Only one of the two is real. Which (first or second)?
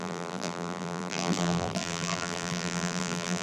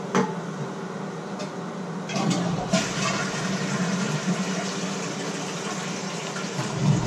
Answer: second